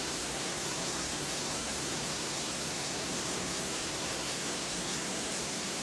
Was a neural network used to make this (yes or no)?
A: yes